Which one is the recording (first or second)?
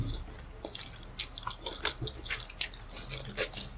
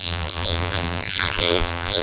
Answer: first